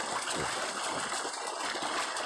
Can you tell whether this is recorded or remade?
recorded